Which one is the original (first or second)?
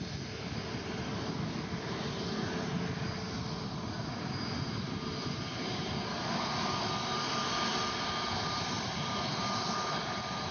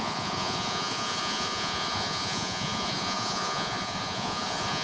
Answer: first